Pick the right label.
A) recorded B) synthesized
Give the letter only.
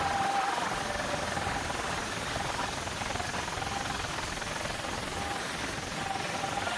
A